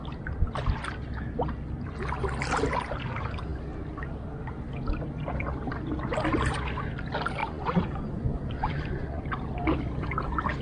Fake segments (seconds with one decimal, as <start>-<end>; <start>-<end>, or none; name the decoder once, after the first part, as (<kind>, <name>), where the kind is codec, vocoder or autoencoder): 7.4-9.2 (vocoder, Vocos)